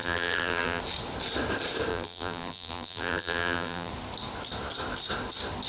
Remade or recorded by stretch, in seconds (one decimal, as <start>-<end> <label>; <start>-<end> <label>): 0.0-0.8 remade; 0.8-1.9 recorded; 1.9-3.9 remade; 3.9-5.7 recorded